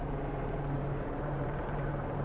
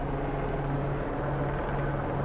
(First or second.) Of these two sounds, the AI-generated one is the first